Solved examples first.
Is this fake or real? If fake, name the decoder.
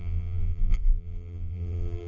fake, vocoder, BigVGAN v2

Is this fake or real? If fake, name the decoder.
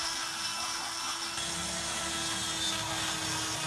real